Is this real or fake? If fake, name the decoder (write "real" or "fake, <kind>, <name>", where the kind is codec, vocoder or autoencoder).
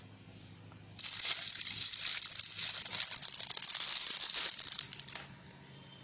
real